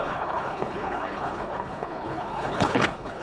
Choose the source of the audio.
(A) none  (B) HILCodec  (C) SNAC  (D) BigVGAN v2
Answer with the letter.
B